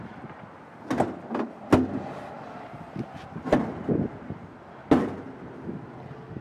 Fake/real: real